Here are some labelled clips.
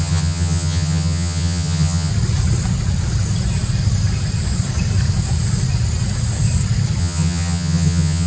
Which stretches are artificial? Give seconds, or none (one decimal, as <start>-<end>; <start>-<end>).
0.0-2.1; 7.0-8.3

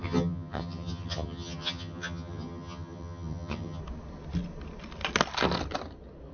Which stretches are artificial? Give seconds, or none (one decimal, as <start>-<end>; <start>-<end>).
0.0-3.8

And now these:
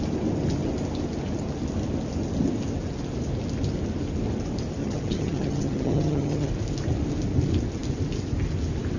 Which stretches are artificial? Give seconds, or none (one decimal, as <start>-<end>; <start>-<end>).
4.8-6.5